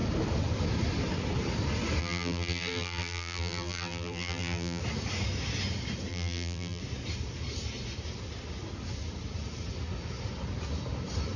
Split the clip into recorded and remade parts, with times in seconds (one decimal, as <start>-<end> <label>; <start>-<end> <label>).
0.0-2.0 recorded; 2.0-4.8 remade; 4.8-6.1 recorded; 6.1-6.8 remade; 6.8-11.4 recorded